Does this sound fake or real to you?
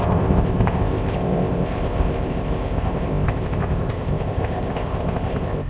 fake